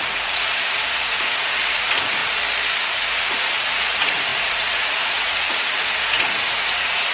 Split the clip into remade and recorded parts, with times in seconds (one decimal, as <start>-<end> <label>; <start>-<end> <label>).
0.0-2.2 remade; 2.2-2.9 recorded; 2.9-7.1 remade

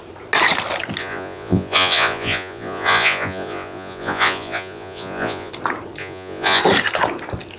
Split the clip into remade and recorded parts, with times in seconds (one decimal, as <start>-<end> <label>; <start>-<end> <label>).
0.0-1.0 recorded; 1.0-5.5 remade; 5.5-6.0 recorded; 6.0-6.6 remade; 6.6-7.6 recorded

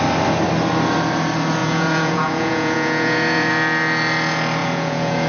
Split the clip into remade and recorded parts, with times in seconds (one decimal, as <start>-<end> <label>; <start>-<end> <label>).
0.0-1.6 recorded; 1.6-3.5 remade; 3.5-4.6 recorded; 4.6-5.3 remade

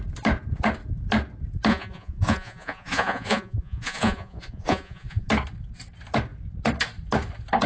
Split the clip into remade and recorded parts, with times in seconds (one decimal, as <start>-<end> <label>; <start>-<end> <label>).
0.0-1.7 recorded; 1.7-5.3 remade; 5.3-7.7 recorded

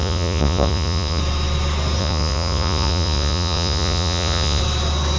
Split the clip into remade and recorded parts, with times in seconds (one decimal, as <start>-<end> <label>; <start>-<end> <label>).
0.0-1.2 remade; 1.2-2.0 recorded; 2.0-4.6 remade; 4.6-5.2 recorded

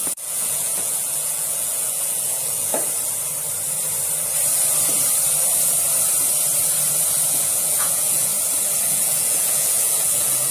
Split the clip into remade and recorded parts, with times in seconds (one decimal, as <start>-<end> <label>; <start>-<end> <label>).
0.0-2.7 remade; 2.7-7.3 recorded; 7.3-8.3 remade; 8.3-8.9 recorded; 8.9-10.5 remade

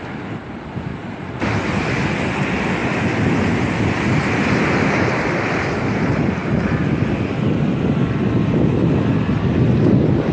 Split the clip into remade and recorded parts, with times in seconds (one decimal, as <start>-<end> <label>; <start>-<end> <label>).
0.0-0.9 recorded; 0.9-1.4 remade; 1.4-10.3 recorded

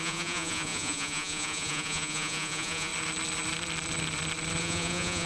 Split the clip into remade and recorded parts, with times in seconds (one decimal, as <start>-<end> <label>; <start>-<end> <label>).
0.0-2.9 remade; 2.9-4.6 recorded; 4.6-5.3 remade